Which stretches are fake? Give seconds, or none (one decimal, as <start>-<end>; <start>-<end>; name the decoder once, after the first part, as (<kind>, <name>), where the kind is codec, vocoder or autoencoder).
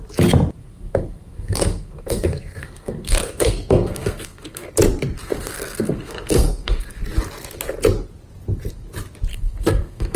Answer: 0.6-4.7 (codec, SNAC); 5.2-7.0; 9.3-10.2